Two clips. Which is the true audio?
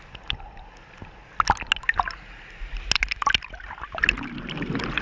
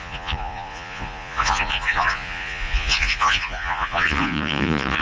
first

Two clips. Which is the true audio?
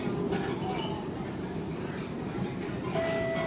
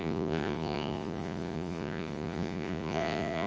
first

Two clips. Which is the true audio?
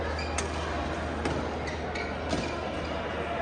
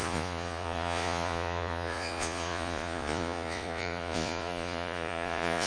first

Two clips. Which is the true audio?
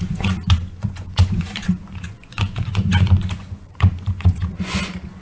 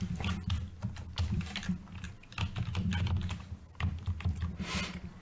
second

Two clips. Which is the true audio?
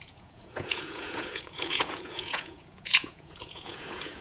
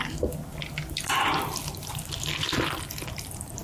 second